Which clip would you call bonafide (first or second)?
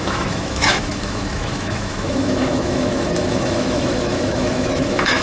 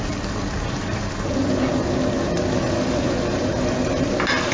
second